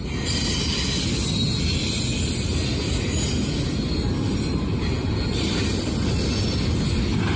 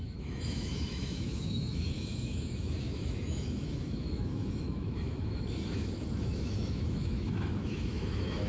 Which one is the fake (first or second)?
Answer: second